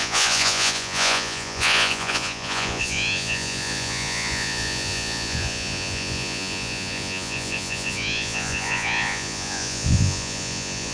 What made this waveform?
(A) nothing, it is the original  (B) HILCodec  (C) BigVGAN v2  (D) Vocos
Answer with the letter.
D